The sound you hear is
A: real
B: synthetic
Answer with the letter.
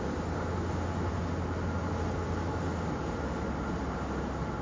A